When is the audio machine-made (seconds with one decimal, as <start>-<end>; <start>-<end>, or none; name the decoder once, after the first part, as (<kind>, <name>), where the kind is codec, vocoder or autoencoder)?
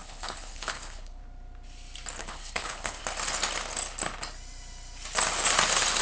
0.0-1.2 (codec, HILCodec); 2.2-3.0